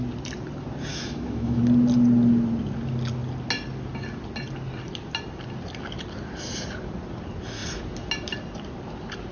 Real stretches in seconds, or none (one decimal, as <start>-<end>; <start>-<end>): 0.0-0.9; 1.6-9.3